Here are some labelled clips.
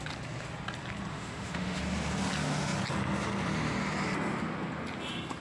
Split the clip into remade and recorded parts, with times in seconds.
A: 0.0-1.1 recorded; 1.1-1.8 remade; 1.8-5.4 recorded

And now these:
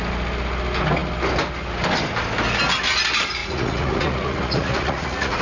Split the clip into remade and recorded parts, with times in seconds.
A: 0.0-3.4 recorded; 3.4-5.4 remade

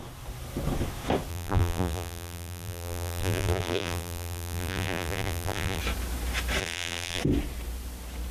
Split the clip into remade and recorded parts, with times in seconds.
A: 0.0-1.3 recorded; 1.3-5.8 remade; 5.8-6.6 recorded; 6.6-7.2 remade; 7.2-8.3 recorded

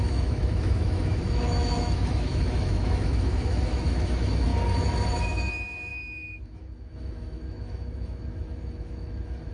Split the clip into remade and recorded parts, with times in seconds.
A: 0.0-4.5 remade; 4.5-5.1 recorded; 5.1-9.5 remade

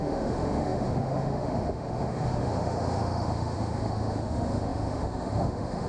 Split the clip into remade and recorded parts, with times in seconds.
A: 0.0-5.9 remade

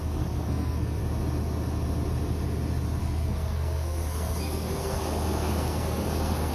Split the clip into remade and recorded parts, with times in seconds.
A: 0.0-1.0 remade; 1.0-3.0 recorded; 3.0-6.5 remade

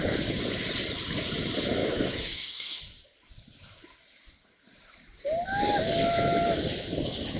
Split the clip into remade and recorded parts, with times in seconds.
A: 0.0-1.8 recorded; 1.8-2.8 remade; 2.8-7.4 recorded

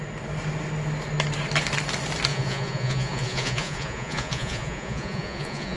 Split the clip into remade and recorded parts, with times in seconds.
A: 0.0-2.3 recorded; 2.3-5.8 remade